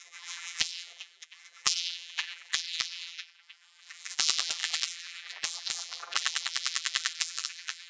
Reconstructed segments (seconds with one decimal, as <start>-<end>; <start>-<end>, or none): 0.0-7.9